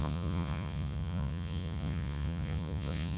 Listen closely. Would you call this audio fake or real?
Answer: fake